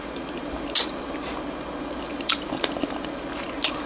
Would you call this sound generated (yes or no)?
no